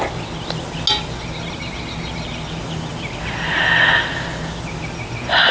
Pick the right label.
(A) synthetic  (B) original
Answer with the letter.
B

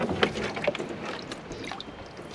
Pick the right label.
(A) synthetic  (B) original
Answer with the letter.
B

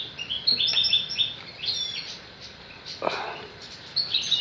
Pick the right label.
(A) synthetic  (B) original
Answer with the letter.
B